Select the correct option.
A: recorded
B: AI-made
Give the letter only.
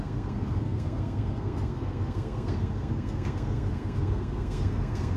B